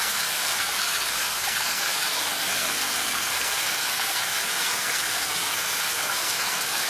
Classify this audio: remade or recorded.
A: remade